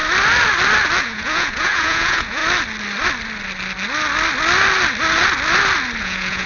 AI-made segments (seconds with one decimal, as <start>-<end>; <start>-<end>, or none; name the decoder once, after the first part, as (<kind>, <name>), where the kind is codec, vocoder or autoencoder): 1.0-2.4 (vocoder, Vocos); 6.0-6.5